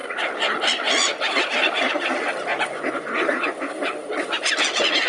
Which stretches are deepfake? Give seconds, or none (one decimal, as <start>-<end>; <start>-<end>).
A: 2.5-3.7